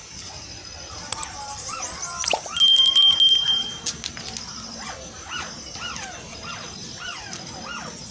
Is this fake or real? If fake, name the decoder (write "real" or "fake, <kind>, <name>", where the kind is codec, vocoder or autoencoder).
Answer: real